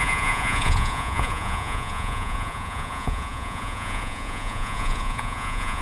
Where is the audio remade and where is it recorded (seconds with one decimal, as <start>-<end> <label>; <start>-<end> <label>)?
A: 0.0-5.8 remade